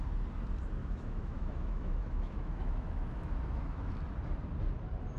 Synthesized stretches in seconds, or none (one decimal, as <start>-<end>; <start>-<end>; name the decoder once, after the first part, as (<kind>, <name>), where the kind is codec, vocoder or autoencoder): 0.8-3.9 (autoencoder, DAC-VAE)